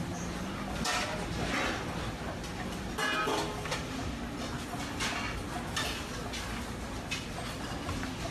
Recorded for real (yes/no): yes